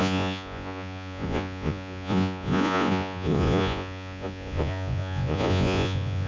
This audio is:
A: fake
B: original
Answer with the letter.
A